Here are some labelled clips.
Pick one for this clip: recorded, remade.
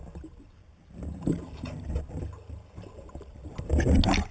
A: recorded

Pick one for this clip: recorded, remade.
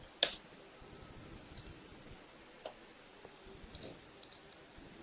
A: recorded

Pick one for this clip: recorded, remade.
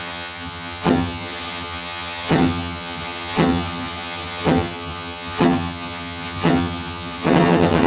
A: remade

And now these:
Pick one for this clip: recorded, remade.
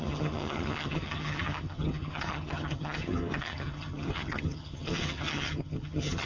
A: remade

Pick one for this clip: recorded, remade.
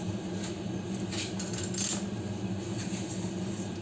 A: recorded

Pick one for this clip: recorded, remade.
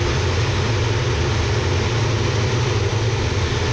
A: recorded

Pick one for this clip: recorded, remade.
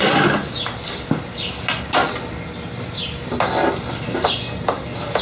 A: recorded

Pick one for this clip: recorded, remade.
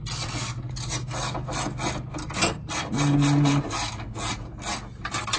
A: recorded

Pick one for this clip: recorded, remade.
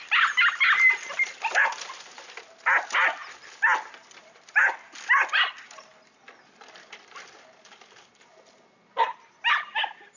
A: recorded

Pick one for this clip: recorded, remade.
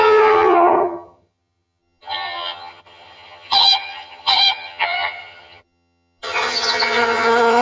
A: remade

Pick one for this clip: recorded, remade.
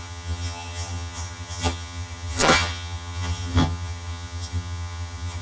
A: remade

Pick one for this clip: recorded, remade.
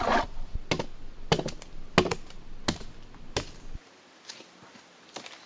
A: recorded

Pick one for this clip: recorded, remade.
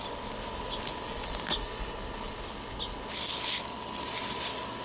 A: recorded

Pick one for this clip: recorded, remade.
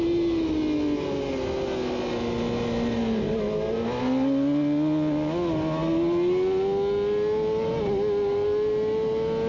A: recorded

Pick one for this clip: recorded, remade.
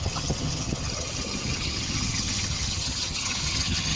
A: remade